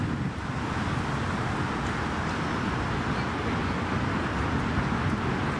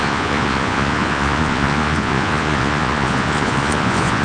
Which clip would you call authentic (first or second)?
first